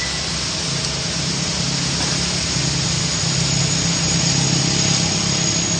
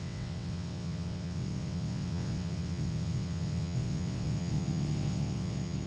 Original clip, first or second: first